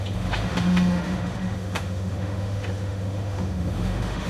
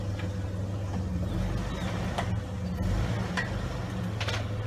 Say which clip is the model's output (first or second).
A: first